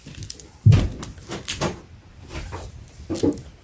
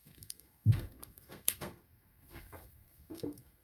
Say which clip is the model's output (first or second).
second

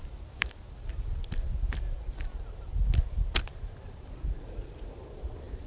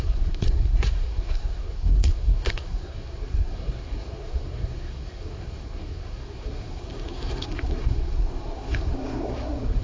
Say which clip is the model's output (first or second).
second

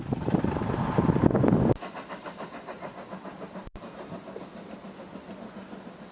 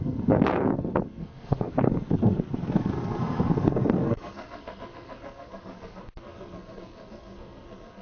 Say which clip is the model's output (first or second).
second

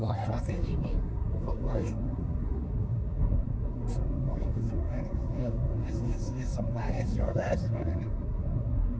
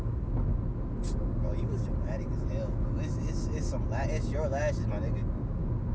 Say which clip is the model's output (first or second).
first